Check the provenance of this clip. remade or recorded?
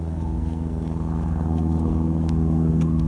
remade